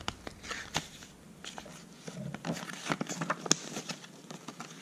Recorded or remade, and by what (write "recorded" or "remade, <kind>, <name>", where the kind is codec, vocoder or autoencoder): recorded